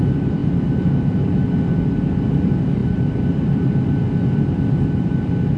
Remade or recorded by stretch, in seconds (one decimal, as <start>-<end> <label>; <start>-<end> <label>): 0.0-5.6 recorded